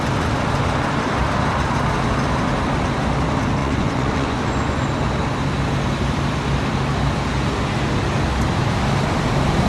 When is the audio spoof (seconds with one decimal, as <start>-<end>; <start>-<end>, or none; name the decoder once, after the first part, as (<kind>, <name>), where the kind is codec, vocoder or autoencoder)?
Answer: 3.6-4.8 (vocoder, Vocos)